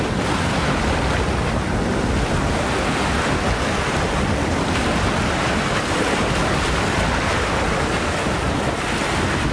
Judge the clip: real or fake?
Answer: real